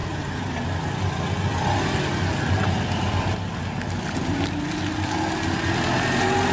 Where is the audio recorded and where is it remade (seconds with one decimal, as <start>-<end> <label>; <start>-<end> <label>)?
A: 0.0-6.5 recorded